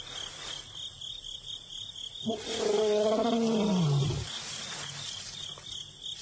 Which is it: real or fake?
real